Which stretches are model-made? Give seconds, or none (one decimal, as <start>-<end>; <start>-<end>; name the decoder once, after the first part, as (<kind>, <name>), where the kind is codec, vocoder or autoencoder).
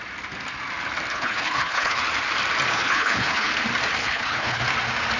1.1-2.0 (codec, HILCodec); 2.7-3.5; 4.0-4.6